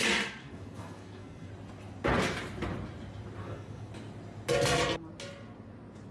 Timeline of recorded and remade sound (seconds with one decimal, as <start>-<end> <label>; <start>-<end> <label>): 0.0-0.4 recorded; 0.4-1.5 remade; 1.5-3.4 recorded; 3.4-3.9 remade; 3.9-6.1 recorded